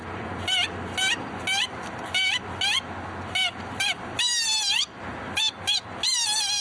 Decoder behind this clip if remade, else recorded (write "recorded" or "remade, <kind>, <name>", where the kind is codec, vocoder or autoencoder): recorded